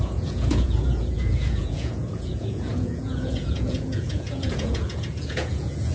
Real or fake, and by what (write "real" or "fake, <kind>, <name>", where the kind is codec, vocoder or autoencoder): fake, vocoder, Vocos